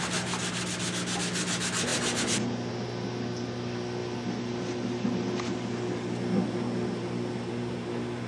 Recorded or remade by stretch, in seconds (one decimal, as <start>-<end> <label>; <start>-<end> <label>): 0.0-4.0 recorded; 4.0-7.5 remade; 7.5-8.3 recorded